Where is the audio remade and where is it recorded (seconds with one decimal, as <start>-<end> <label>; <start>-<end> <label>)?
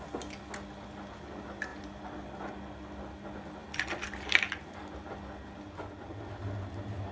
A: 0.0-7.1 recorded